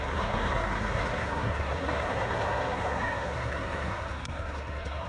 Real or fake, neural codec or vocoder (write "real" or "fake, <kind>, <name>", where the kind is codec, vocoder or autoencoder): fake, codec, SNAC